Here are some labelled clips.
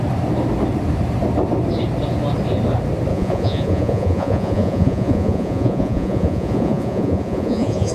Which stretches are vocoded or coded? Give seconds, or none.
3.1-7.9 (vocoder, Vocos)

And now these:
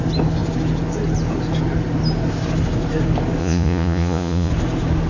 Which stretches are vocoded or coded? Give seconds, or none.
3.4-4.5 (vocoder, Vocos)

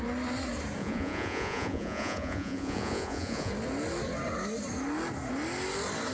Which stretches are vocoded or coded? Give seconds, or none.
0.8-3.5 (vocoder, Vocos)

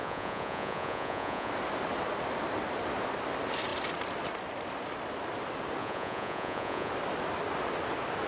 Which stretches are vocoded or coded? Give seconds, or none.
0.0-1.5 (vocoder, Vocos); 5.8-6.9

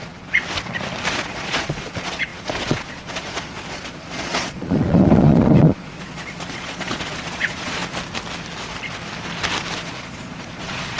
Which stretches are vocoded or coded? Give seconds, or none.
0.0-0.4 (vocoder, Vocos); 1.1-7.8; 9.8-11.0